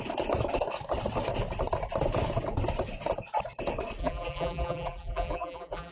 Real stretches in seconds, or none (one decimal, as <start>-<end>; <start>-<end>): 0.0-4.0